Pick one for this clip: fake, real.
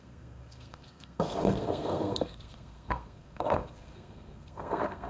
fake